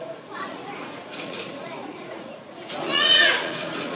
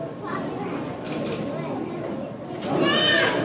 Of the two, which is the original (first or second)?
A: second